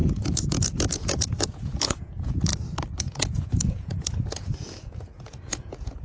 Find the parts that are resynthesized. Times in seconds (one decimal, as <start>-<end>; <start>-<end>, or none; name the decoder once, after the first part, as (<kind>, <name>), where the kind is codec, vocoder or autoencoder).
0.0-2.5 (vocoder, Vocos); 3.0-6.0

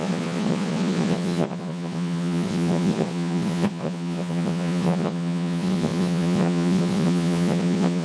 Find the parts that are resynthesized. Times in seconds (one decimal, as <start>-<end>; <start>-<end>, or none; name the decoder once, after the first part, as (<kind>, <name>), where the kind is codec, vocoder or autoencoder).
0.0-8.0 (vocoder, Vocos)

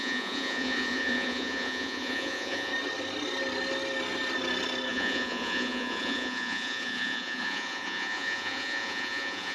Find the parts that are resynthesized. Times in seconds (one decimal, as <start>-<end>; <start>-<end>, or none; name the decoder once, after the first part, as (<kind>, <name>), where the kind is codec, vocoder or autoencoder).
0.0-2.7 (vocoder, Vocos); 4.9-9.5